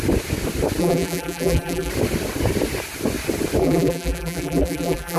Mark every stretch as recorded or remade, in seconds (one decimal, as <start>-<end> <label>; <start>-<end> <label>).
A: 0.0-0.8 recorded; 0.8-1.9 remade; 1.9-3.6 recorded; 3.6-5.2 remade